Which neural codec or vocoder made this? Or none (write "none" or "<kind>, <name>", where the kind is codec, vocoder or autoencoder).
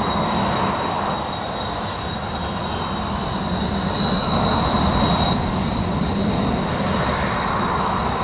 none